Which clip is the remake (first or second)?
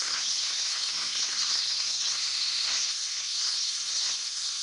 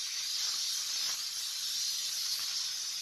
first